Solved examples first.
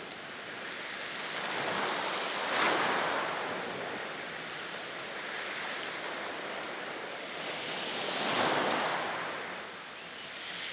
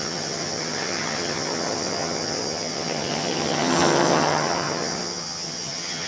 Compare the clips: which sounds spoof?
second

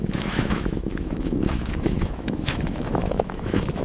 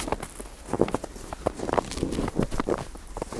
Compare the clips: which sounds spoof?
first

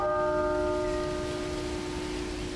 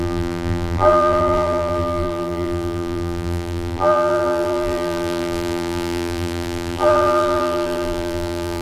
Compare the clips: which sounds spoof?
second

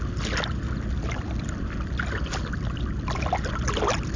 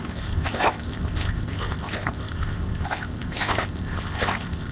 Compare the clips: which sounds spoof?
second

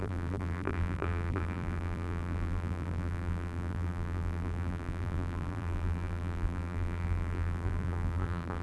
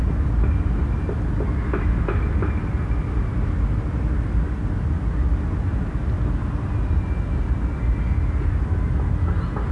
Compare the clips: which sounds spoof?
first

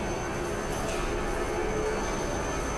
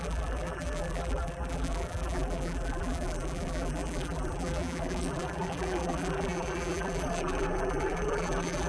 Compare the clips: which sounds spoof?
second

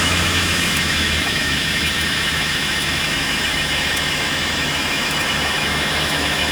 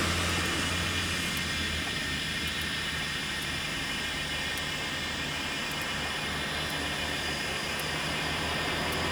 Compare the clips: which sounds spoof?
first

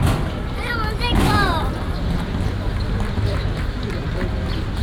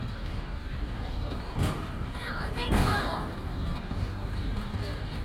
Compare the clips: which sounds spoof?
second